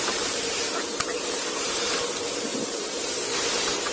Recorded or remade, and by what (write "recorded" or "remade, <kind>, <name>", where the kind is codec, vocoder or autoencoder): remade, vocoder, BigVGAN v2